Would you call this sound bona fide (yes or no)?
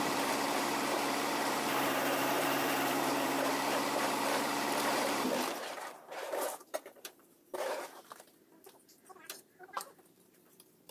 no